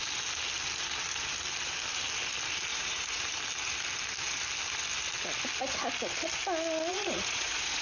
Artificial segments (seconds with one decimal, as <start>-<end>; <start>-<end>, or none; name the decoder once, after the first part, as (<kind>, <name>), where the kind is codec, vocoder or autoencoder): 2.7-3.2 (vocoder, Vocos); 6.9-7.8